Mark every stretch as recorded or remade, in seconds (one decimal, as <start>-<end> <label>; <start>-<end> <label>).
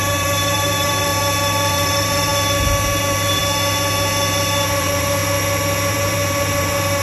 0.0-1.1 remade; 1.1-1.7 recorded; 1.7-2.3 remade; 2.3-3.0 recorded; 3.0-3.4 remade; 3.4-4.8 recorded; 4.8-5.2 remade; 5.2-5.9 recorded; 5.9-7.0 remade